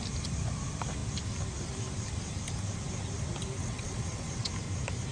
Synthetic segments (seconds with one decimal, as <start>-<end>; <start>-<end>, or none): 3.6-4.5